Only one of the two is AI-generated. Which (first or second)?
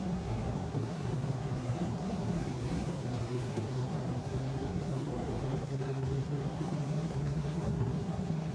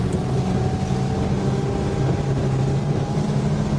first